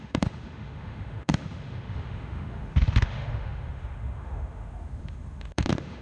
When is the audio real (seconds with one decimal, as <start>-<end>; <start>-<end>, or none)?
none